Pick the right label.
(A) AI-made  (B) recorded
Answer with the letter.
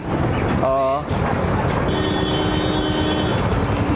B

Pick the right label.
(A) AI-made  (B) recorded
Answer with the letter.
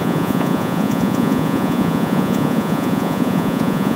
A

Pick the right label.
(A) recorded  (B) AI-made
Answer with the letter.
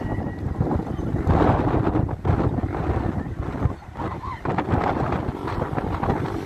A